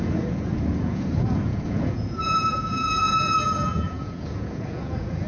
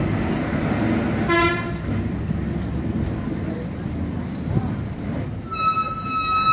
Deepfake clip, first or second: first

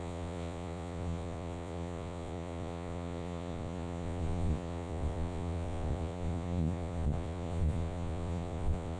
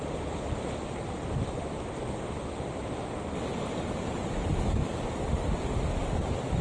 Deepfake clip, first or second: first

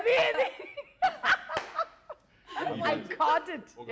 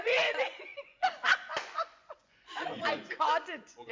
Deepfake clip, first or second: second